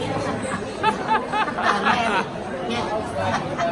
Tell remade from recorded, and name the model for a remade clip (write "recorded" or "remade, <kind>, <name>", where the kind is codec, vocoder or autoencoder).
recorded